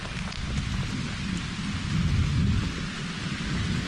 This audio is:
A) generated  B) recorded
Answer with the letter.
B